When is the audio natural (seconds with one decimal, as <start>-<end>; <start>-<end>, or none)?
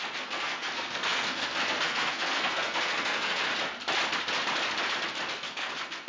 3.5-5.3